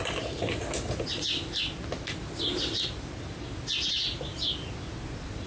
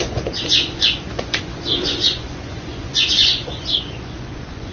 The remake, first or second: second